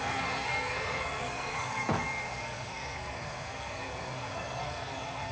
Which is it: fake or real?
fake